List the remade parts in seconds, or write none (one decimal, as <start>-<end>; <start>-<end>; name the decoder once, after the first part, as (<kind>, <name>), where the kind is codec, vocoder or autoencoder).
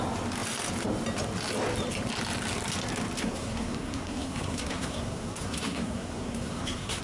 3.2-7.0 (codec, SNAC)